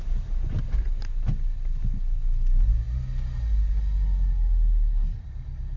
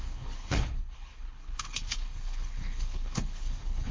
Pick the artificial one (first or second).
second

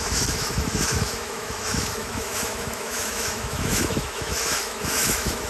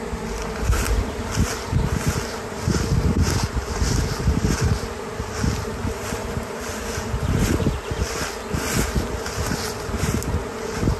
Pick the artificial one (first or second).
first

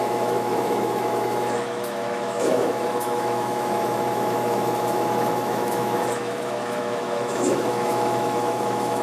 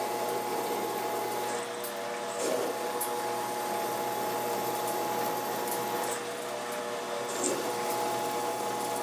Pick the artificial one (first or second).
first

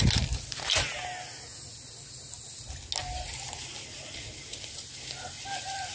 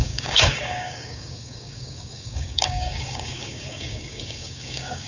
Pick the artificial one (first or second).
second